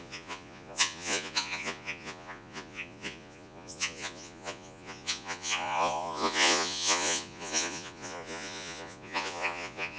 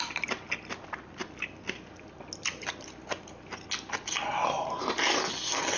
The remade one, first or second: first